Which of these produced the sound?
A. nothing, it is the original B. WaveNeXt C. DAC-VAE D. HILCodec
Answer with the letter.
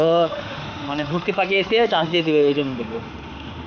C